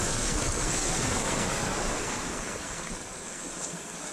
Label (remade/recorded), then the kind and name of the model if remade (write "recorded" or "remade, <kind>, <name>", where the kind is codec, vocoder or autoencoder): remade, codec, SNAC